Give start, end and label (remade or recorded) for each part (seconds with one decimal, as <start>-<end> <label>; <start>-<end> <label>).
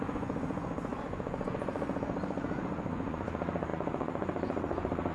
0.0-5.1 remade